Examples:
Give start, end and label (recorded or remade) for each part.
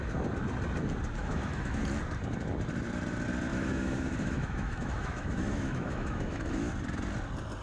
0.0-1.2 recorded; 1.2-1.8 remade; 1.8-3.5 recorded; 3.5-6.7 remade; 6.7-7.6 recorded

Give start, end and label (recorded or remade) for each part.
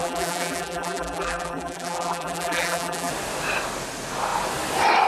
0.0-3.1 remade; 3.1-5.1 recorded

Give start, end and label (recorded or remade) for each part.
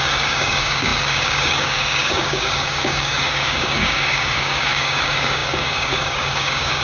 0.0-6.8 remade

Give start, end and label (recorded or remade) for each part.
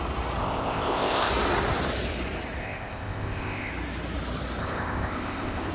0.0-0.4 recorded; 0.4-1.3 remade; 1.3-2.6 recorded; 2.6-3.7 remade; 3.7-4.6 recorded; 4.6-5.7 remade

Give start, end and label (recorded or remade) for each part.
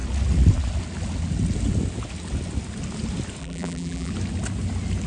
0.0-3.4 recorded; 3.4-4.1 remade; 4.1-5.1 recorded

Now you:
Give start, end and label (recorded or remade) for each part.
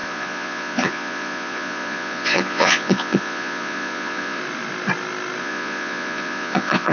0.0-4.4 remade; 4.4-5.4 recorded; 5.4-6.9 remade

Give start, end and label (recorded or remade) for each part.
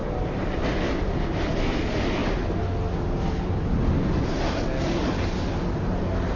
0.0-6.4 recorded